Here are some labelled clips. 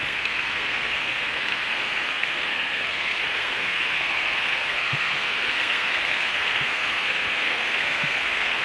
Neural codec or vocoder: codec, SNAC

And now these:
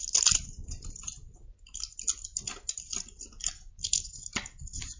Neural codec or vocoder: none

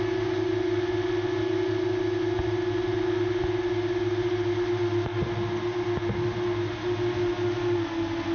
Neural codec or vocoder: none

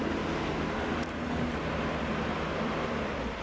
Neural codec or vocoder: none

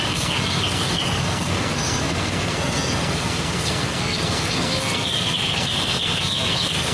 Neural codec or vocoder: codec, SNAC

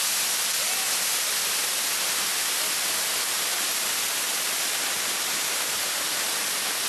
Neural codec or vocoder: none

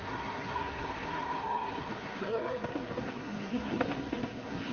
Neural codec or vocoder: codec, SNAC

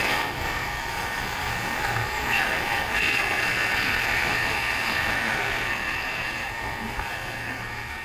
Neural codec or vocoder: codec, SNAC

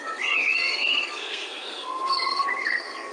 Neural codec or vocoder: codec, SNAC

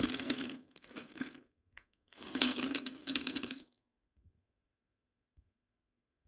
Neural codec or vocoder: codec, SNAC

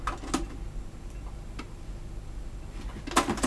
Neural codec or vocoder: none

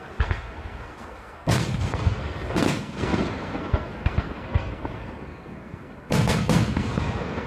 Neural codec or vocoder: codec, SNAC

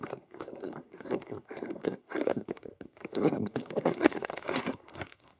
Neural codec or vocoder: codec, SNAC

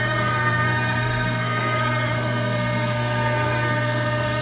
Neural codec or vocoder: codec, SNAC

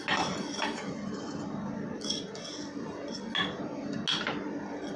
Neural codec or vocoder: none